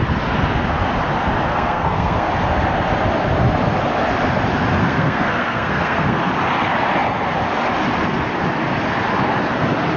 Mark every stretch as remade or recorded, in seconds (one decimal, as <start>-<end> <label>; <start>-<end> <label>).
0.0-1.5 recorded; 1.5-2.3 remade; 2.3-4.8 recorded; 4.8-6.2 remade; 6.2-10.0 recorded